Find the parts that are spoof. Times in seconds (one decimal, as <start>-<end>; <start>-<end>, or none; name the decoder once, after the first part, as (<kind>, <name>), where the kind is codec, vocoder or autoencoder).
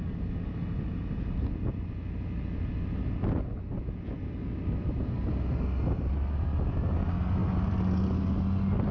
none